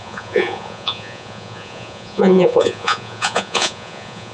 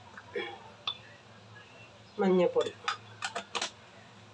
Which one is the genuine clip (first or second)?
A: second